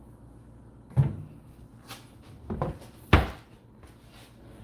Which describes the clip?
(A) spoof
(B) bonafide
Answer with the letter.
B